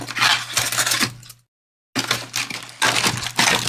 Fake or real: real